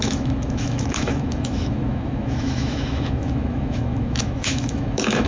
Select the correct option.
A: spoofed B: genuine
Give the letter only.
A